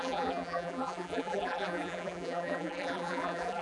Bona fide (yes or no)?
no